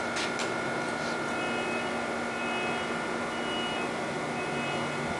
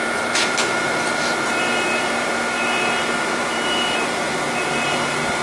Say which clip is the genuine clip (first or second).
first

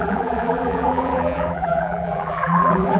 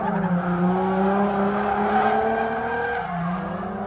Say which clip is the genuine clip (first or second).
second